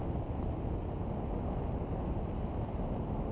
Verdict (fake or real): real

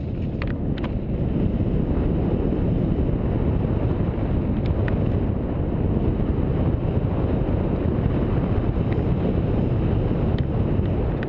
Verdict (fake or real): real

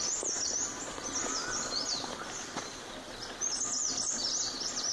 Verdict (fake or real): real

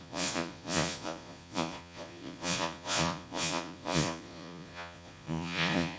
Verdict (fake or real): fake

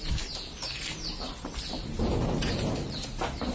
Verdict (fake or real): real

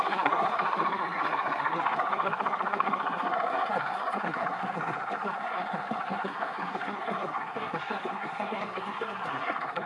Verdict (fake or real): fake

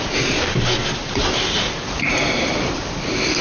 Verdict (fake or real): real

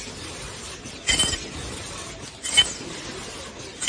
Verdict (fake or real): real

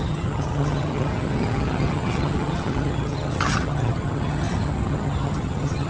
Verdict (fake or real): fake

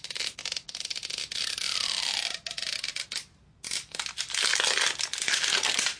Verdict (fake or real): real